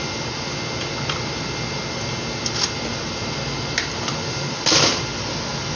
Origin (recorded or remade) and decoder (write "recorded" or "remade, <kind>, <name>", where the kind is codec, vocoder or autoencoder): recorded